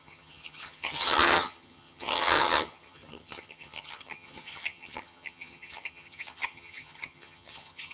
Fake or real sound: fake